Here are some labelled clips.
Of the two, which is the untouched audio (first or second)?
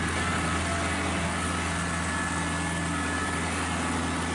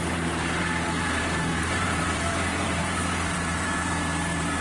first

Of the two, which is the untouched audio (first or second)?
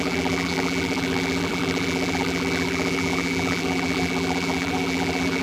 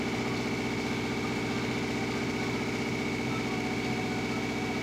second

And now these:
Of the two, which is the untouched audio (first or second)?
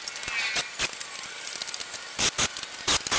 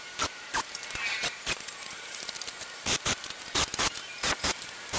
first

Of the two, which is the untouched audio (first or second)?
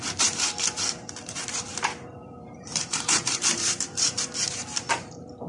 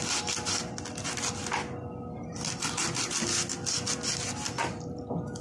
second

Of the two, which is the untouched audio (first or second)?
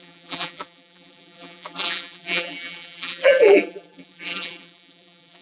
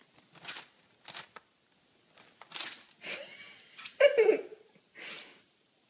second